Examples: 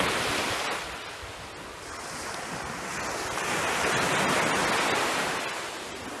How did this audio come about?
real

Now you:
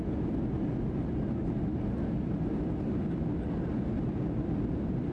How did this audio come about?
real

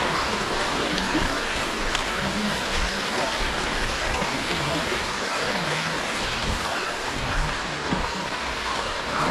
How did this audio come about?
fake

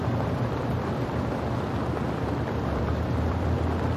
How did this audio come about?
fake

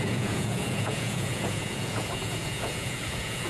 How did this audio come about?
fake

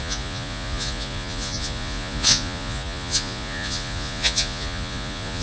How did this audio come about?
fake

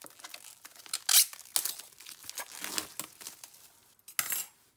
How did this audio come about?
real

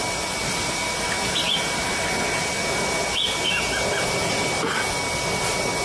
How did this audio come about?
real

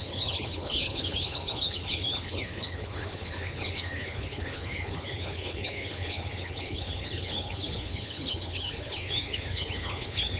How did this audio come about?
fake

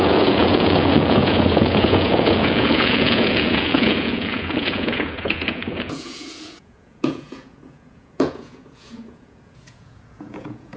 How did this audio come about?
fake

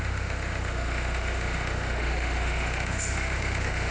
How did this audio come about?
fake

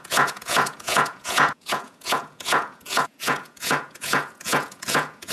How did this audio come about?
fake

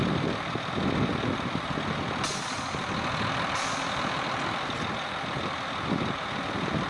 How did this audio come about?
real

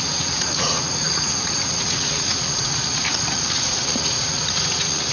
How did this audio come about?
fake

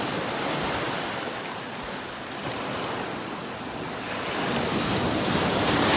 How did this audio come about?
real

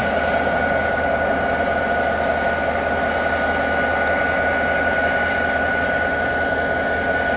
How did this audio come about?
real